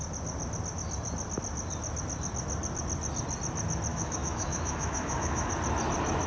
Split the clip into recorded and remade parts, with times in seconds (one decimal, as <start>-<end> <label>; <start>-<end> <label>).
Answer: 0.0-3.9 recorded; 3.9-5.5 remade; 5.5-6.3 recorded